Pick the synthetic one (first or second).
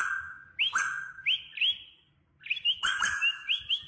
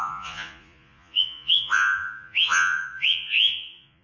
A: second